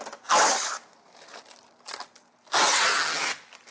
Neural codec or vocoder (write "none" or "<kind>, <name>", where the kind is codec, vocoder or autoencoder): none